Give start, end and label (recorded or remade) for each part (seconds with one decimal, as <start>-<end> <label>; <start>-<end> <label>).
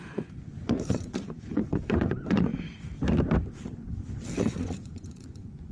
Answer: 0.0-2.5 remade; 2.5-4.4 recorded; 4.4-5.7 remade